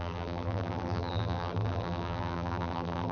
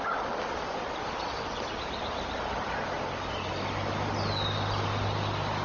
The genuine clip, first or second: second